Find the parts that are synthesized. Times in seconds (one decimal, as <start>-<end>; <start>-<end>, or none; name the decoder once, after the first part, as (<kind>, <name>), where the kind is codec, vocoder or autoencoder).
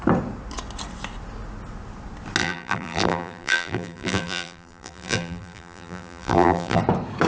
2.4-6.8 (vocoder, BigVGAN v2)